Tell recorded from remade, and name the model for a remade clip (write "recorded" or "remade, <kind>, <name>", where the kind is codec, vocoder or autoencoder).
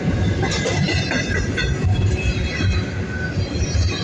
recorded